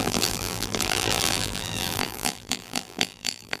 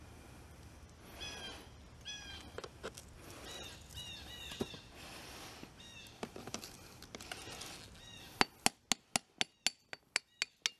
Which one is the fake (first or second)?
first